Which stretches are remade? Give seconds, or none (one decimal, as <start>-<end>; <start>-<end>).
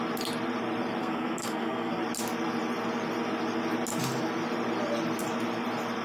1.0-2.0